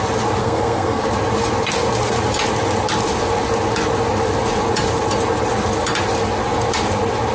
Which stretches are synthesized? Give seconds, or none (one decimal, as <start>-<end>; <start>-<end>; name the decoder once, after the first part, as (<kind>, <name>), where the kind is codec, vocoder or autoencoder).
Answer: 0.4-1.0 (codec, SNAC)